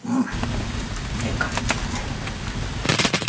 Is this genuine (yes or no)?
yes